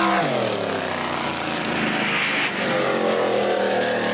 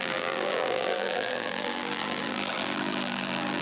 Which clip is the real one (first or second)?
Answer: first